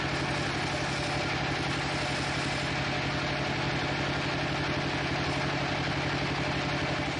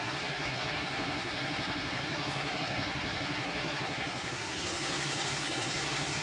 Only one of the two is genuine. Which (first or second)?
first